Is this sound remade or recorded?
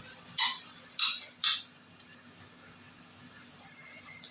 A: recorded